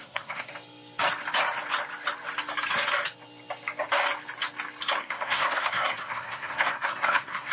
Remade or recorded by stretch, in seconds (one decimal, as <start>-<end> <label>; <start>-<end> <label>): 0.0-0.5 remade; 0.5-5.0 recorded; 5.0-7.5 remade